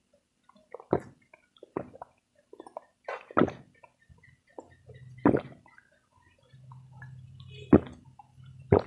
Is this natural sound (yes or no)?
yes